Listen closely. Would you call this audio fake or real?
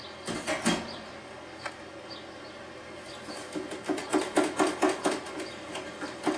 real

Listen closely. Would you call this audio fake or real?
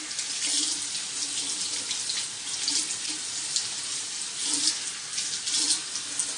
real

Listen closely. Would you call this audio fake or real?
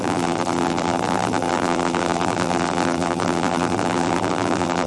fake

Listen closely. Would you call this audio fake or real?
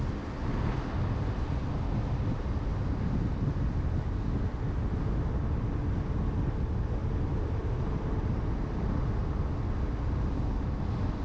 real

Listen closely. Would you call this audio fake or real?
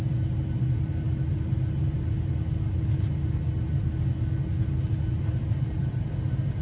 real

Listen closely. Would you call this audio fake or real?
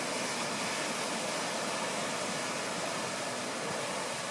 real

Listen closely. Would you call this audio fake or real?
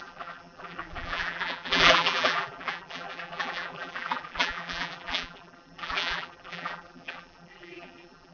fake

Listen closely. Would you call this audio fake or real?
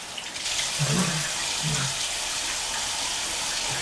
real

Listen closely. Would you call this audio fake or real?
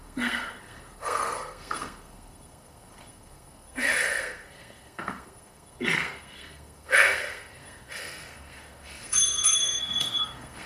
fake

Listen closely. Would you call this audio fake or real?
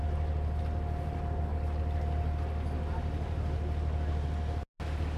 real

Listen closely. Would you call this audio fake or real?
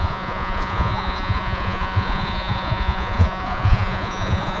fake